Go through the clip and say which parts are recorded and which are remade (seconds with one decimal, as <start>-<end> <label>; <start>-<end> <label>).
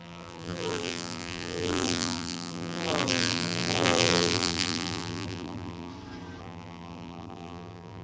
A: 0.0-5.9 remade; 5.9-6.4 recorded; 6.4-8.0 remade